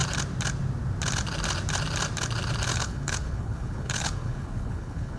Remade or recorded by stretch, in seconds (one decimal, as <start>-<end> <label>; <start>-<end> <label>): 0.0-2.7 recorded; 2.7-5.2 remade